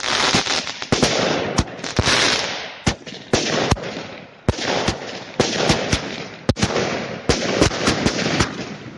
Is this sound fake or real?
real